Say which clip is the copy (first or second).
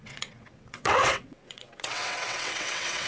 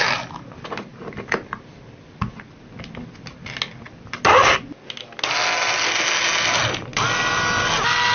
first